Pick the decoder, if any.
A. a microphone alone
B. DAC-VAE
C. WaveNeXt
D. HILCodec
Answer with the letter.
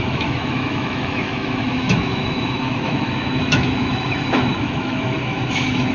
B